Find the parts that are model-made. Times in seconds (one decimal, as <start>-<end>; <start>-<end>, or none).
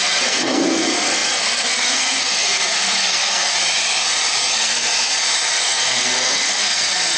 0.0-3.5; 4.5-4.9; 5.5-7.2